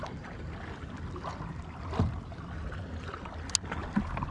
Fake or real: real